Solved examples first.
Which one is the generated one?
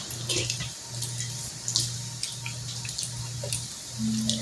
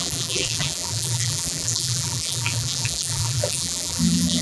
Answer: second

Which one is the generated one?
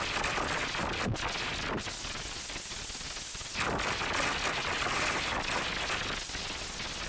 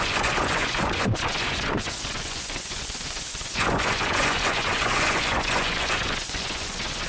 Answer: second